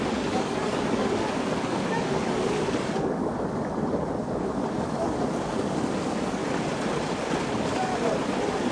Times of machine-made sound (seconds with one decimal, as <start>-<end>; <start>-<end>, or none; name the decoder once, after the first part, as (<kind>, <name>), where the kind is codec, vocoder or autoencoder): 0.0-6.4 (codec, DAC); 7.5-7.9